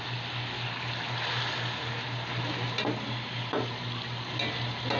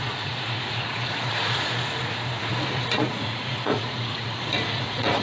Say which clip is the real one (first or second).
first